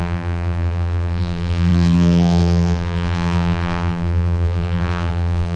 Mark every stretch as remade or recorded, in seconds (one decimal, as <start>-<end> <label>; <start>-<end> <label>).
0.0-5.6 remade